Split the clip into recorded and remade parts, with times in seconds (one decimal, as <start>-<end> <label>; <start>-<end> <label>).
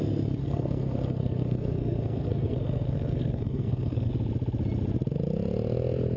0.0-0.4 recorded; 0.4-4.1 remade; 4.1-6.2 recorded